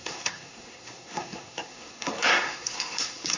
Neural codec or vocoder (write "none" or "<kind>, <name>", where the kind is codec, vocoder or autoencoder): codec, SNAC